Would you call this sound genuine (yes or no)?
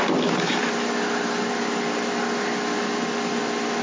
yes